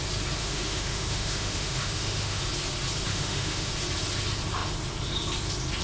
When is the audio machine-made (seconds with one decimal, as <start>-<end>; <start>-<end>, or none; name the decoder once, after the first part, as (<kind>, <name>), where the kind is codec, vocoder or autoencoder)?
0.4-2.4 (autoencoder, DAC-VAE); 3.1-3.7